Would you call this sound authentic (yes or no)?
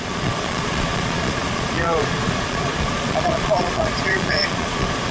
no